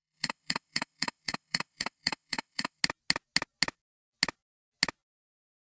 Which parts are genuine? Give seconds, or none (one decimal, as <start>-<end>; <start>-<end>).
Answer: 2.8-5.6